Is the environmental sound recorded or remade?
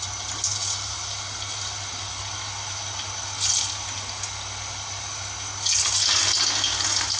recorded